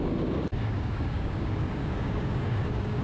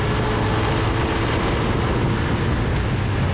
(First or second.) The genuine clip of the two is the second